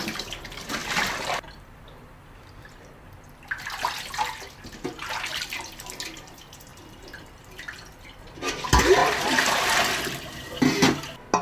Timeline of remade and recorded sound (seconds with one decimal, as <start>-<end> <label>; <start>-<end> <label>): 0.0-0.8 recorded; 0.8-3.6 remade; 3.6-6.7 recorded; 6.7-8.2 remade; 8.2-9.0 recorded; 9.0-9.5 remade; 9.5-11.4 recorded